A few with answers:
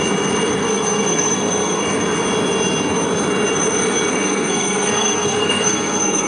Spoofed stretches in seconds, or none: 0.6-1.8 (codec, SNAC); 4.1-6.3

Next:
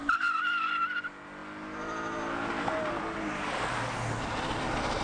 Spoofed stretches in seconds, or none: none